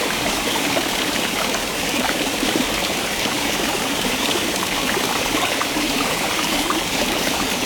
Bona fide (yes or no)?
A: no